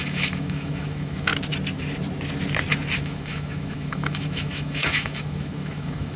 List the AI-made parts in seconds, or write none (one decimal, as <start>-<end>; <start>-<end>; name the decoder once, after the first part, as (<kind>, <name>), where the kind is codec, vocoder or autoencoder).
0.0-1.3 (autoencoder, DAC-VAE); 3.0-6.2